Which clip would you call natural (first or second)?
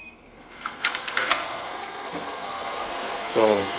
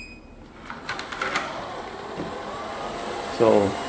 second